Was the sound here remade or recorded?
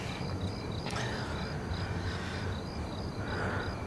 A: recorded